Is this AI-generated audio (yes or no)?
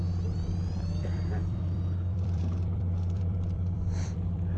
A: yes